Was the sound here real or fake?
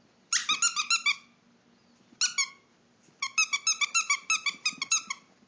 real